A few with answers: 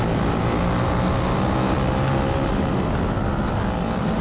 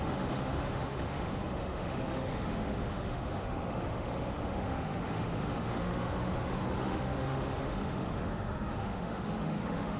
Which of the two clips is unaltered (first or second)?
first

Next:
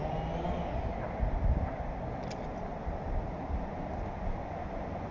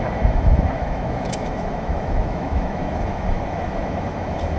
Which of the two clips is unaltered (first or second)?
first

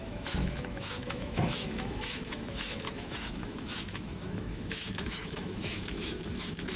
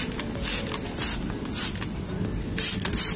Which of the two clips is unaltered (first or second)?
second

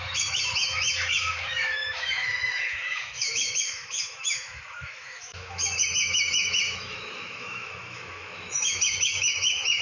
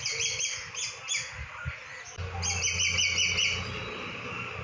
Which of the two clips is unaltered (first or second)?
second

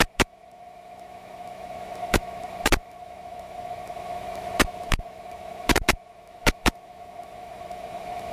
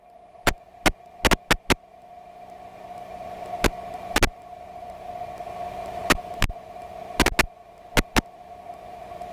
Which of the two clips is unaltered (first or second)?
second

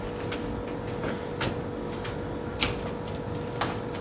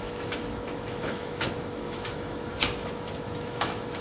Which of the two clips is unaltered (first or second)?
first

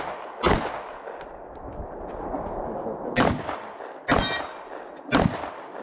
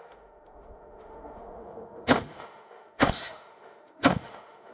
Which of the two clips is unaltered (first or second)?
first